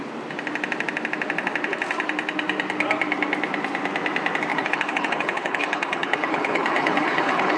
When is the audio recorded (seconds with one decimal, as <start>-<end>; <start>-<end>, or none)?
0.0-4.5